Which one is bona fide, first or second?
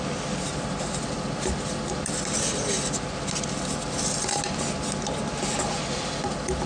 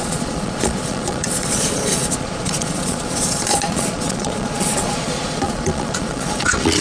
first